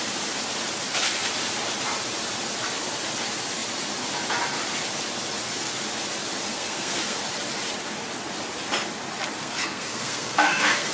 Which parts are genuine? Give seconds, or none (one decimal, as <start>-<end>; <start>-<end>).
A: 0.0-6.5; 7.2-9.4